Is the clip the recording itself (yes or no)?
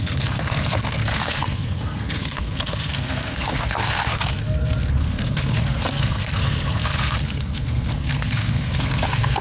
no